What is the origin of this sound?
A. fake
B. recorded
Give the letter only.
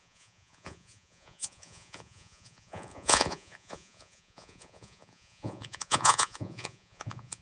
A